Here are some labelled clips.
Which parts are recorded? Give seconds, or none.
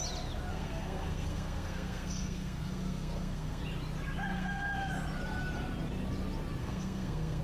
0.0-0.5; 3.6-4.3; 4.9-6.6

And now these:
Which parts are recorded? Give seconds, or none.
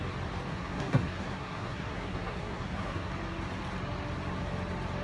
0.0-0.5; 3.1-5.0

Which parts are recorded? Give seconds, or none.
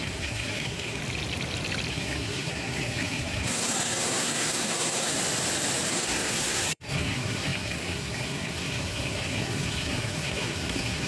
1.0-1.9; 5.1-5.9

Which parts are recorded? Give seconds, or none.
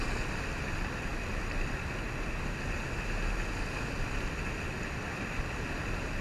0.0-6.2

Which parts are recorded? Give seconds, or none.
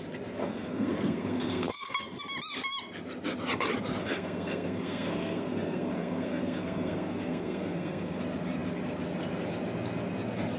0.0-0.4; 2.2-4.0; 8.2-10.6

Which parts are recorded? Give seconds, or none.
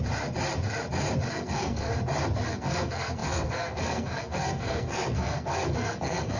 0.0-1.3; 1.9-2.5